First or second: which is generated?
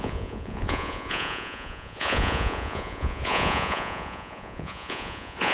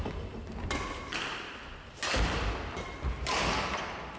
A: first